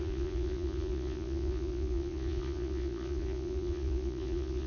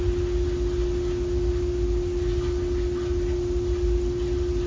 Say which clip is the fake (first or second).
first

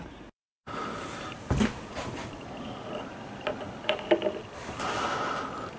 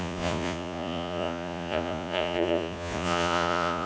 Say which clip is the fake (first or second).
second